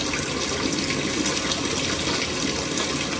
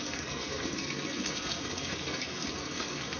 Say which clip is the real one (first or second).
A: first